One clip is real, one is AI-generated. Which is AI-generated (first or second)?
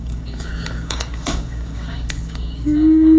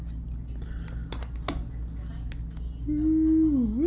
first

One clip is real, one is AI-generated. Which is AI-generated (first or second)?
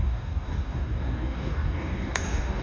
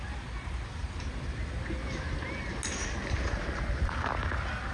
first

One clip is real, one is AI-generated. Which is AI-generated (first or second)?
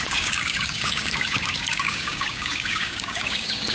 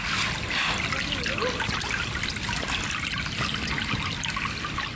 first